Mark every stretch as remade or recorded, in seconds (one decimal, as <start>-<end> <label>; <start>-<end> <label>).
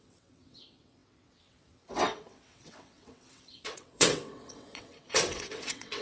0.0-6.0 remade